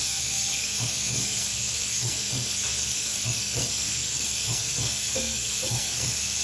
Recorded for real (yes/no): no